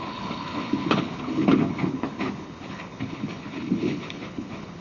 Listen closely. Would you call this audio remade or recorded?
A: remade